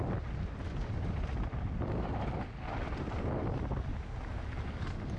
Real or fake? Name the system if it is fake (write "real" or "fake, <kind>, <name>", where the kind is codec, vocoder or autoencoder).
real